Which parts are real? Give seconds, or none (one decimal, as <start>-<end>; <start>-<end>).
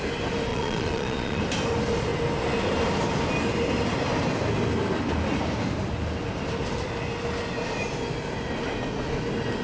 0.0-0.5; 1.4-9.6